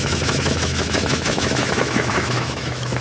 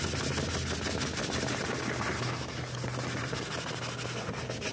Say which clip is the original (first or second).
second